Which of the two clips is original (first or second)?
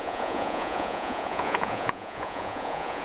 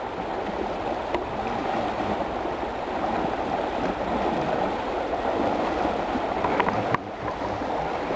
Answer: second